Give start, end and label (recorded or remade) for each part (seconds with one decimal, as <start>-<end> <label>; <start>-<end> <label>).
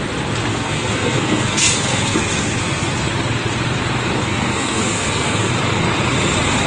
0.0-0.5 recorded; 0.5-2.9 remade; 2.9-4.2 recorded; 4.2-5.5 remade; 5.5-6.7 recorded